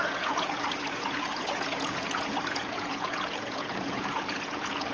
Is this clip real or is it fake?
fake